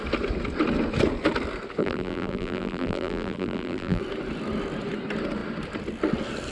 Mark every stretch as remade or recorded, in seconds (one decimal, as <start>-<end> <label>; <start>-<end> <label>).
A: 0.0-1.8 recorded; 1.8-4.0 remade; 4.0-6.5 recorded